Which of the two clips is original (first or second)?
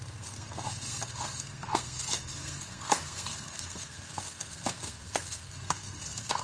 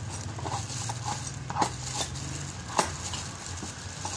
second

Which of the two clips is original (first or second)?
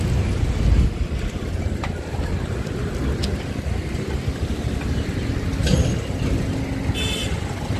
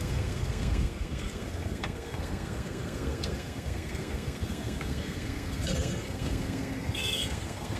first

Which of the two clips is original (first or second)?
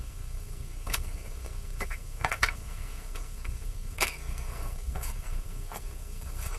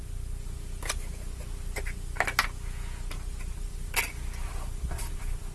second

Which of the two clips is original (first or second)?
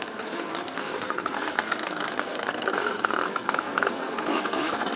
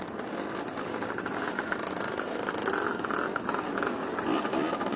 second